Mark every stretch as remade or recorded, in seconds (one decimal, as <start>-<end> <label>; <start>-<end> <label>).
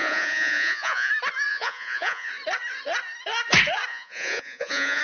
0.0-1.1 remade; 1.1-1.5 recorded; 1.5-2.3 remade; 2.3-3.9 recorded; 3.9-5.0 remade